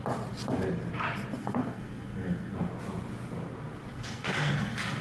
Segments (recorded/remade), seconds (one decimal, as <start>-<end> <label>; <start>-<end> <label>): 0.0-1.4 recorded; 1.4-2.7 remade; 2.7-3.9 recorded; 3.9-5.0 remade